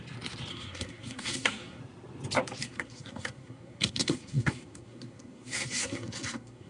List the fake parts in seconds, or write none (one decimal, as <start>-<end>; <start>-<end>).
0.5-1.8; 2.6-6.7